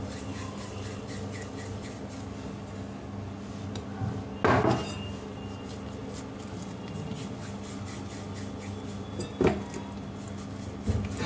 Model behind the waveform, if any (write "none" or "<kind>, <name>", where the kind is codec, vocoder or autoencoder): none